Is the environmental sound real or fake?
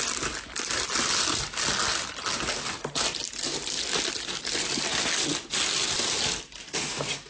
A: real